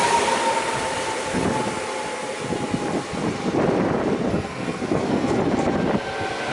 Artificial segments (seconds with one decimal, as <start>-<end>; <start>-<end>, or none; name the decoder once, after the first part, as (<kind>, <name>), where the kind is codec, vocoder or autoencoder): 4.3-5.4 (codec, SNAC)